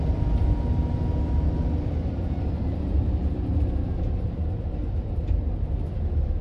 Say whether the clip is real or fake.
real